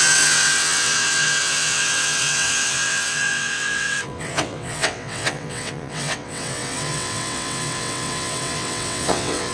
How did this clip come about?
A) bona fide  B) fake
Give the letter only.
B